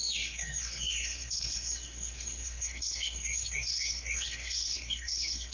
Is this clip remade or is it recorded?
remade